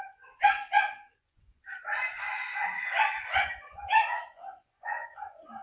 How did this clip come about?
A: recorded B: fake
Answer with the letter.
B